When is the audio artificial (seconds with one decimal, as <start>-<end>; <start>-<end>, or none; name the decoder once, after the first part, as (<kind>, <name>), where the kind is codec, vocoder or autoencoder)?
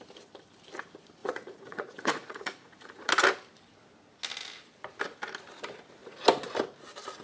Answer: 1.2-3.1 (vocoder, Vocos)